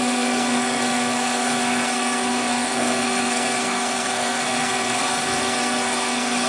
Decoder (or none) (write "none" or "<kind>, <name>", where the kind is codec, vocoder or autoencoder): codec, SNAC